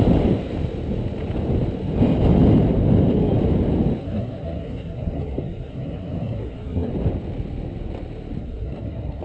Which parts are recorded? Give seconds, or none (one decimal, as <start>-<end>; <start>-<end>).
0.0-4.0; 6.9-8.4